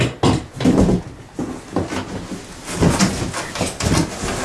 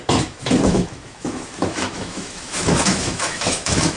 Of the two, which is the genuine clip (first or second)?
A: first